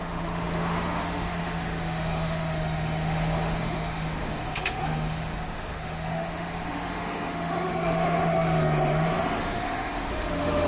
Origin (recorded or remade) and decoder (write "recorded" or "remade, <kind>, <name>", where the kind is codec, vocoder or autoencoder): remade, autoencoder, DAC-VAE